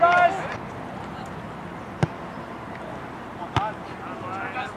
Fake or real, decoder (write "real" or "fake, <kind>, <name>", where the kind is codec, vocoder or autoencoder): real